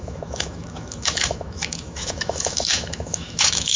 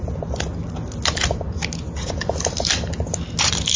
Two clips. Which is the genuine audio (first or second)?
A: second